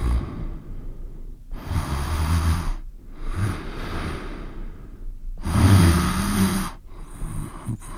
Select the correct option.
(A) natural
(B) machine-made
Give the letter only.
A